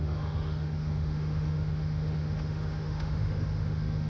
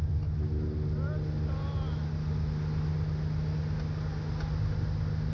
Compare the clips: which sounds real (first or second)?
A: second